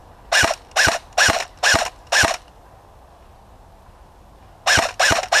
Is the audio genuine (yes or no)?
yes